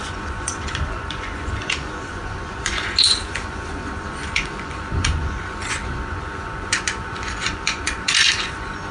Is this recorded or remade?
remade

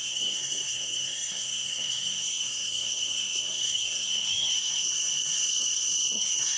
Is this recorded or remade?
remade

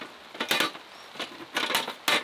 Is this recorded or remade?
recorded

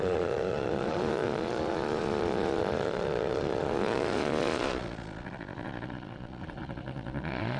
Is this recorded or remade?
remade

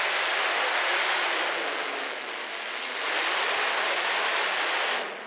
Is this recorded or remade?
recorded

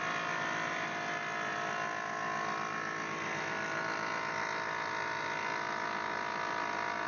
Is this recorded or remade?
recorded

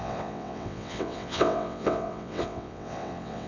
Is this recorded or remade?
remade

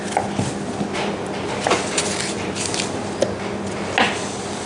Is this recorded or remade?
recorded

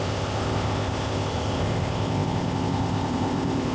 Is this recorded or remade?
remade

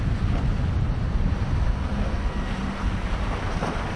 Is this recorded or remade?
recorded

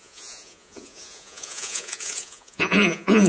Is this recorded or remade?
remade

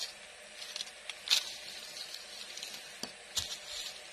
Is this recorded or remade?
recorded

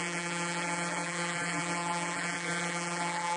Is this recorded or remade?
remade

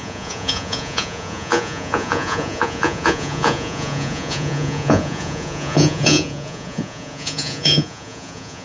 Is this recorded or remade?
remade